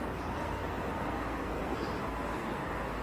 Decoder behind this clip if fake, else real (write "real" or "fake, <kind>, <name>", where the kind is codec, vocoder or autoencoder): fake, codec, SNAC